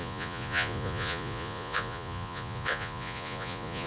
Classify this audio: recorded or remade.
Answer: remade